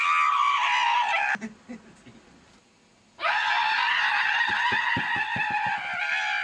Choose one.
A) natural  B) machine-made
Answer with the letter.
A